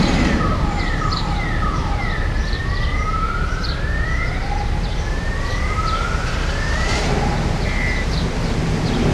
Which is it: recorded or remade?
remade